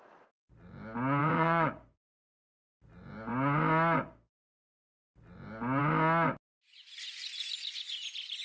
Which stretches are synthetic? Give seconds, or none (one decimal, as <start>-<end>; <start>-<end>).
1.2-2.4